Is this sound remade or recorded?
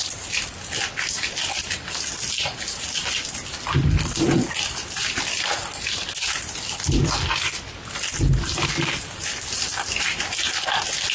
recorded